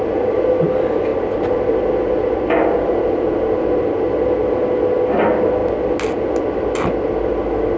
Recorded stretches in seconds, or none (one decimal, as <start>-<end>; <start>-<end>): 0.0-7.8